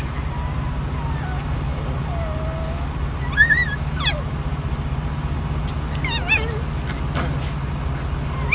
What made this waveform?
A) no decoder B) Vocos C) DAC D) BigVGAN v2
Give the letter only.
A